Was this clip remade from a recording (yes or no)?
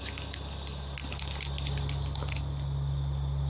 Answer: no